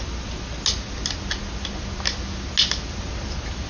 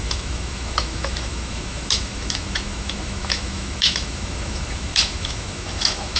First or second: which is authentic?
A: first